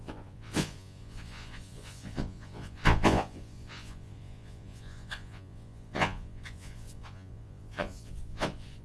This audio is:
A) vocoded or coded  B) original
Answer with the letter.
A